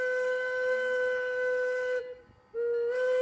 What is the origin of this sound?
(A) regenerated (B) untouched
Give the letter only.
B